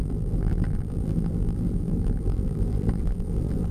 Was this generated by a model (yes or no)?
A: yes